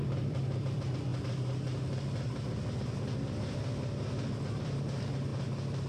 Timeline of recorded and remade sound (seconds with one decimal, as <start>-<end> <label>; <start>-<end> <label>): 0.0-1.1 remade; 1.1-4.6 recorded; 4.6-5.3 remade; 5.3-5.9 recorded